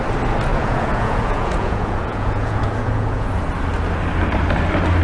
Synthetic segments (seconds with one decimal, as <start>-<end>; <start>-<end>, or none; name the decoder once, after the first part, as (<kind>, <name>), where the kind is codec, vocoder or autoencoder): 0.5-3.3 (vocoder, Vocos)